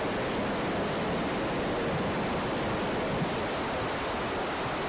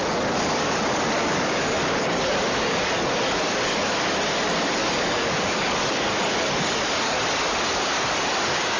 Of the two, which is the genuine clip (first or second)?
first